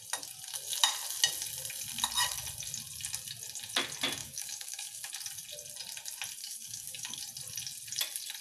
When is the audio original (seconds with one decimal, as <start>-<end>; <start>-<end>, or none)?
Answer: 0.0-4.2; 5.1-6.4; 7.2-8.4